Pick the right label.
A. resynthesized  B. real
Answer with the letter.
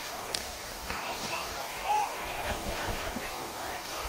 A